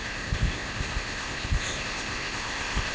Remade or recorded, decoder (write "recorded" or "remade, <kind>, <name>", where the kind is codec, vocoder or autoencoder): remade, codec, ZipCodec